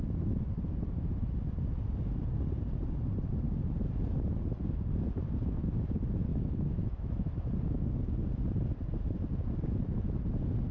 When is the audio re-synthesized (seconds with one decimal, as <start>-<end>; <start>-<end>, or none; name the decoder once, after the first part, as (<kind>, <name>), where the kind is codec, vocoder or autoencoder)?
6.3-7.5 (autoencoder, DAC-VAE)